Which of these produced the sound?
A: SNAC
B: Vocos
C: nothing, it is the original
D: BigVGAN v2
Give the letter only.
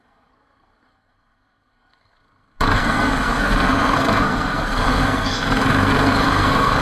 A